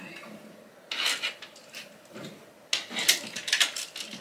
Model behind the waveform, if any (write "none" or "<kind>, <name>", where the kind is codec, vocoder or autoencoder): none